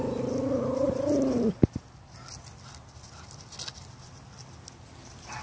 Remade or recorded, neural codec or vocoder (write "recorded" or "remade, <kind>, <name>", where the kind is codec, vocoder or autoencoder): recorded